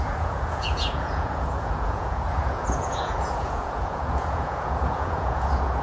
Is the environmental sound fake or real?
fake